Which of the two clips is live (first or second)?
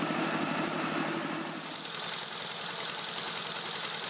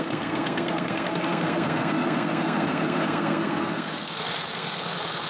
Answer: first